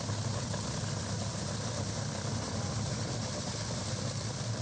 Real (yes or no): no